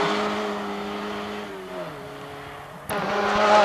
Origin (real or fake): real